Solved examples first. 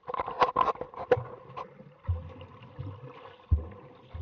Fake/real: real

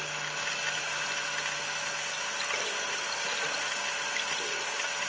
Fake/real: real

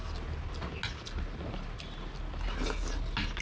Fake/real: real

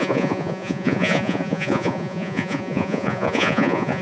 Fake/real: fake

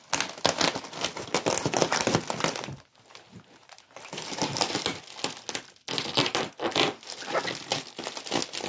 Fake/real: real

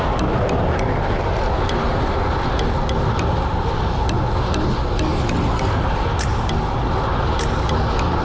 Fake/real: real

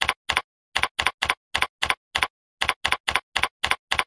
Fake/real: real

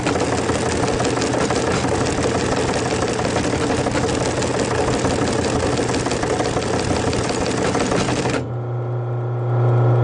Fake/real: real